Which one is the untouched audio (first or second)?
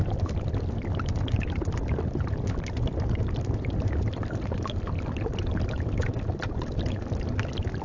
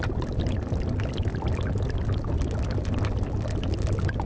second